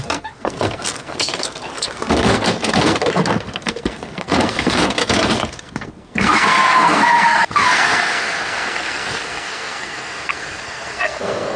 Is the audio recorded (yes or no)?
no